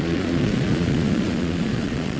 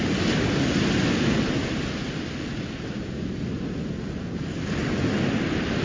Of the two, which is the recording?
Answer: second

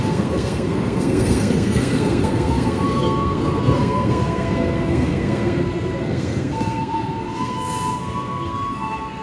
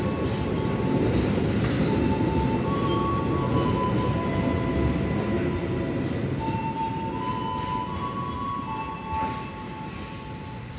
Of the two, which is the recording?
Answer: second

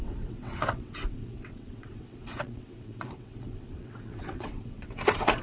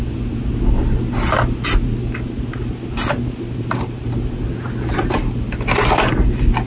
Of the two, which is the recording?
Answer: second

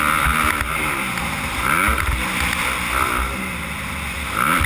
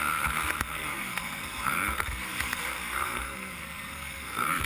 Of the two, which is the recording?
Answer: first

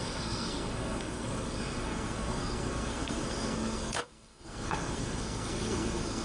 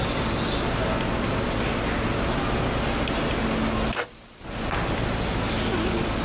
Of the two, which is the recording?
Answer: second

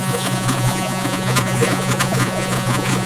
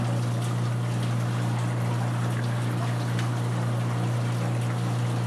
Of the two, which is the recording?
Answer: second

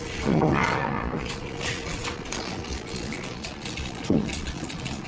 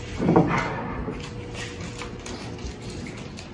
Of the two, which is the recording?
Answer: second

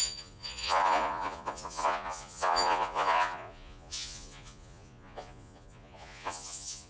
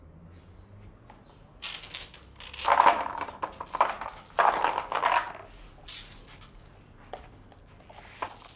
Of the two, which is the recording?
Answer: second